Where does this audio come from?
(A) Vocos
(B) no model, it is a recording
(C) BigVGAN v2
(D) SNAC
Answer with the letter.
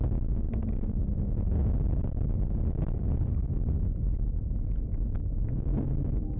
B